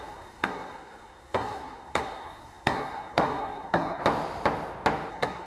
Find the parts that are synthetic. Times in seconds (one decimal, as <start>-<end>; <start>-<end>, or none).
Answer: 0.0-4.0; 5.1-5.5